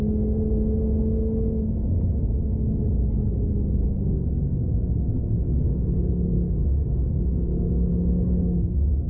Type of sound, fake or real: real